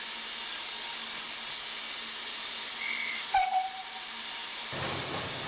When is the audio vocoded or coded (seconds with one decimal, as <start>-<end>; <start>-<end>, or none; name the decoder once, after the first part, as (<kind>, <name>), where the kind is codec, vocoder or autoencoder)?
0.5-1.5 (codec, DAC)